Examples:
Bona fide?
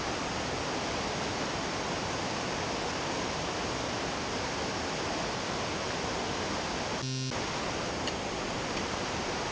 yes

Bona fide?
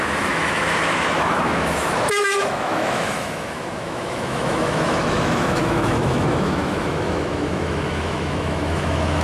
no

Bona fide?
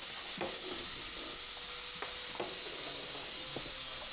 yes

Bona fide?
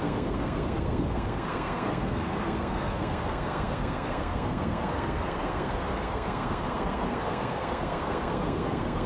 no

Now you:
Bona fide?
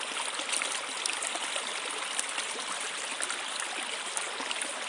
yes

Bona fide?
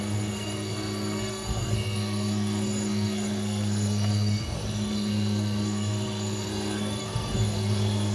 no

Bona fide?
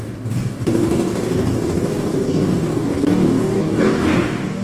no